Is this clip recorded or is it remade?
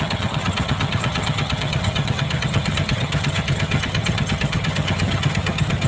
remade